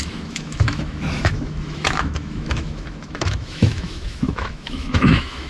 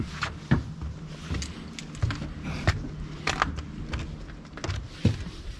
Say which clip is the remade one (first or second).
first